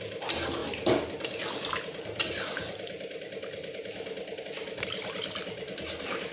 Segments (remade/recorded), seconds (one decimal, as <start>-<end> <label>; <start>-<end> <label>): 0.0-6.3 recorded